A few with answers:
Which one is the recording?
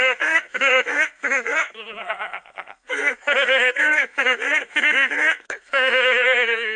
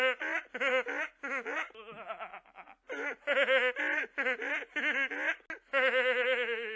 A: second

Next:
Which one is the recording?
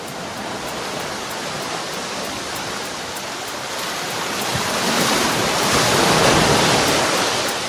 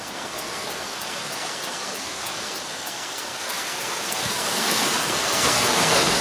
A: first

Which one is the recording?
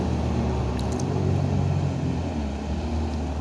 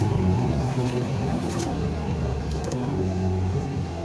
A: first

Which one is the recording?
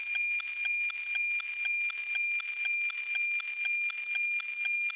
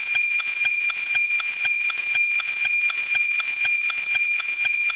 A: first